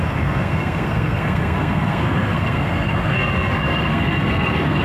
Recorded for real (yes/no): no